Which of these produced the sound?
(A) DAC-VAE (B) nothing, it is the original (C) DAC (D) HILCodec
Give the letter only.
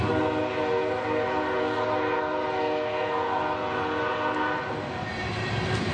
B